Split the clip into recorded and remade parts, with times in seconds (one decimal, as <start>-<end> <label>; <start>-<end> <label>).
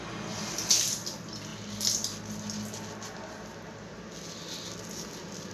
0.0-5.5 recorded